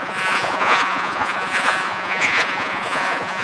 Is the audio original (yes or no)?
no